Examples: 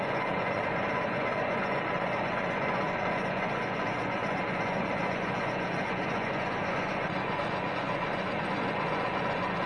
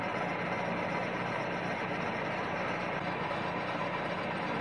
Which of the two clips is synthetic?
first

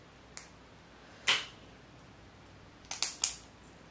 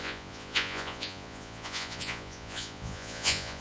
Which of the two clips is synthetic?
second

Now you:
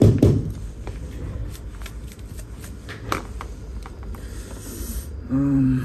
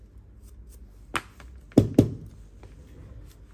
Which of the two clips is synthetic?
first